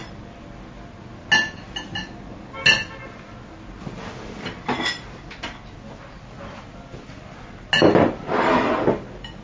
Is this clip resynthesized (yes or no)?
no